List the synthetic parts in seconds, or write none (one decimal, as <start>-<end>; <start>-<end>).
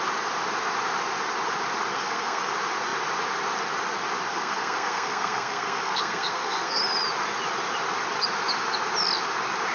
1.9-2.5; 4.3-6.8